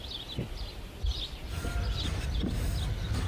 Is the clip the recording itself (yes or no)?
yes